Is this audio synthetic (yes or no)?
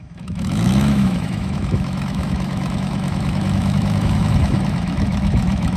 yes